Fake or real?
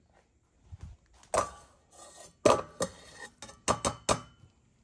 real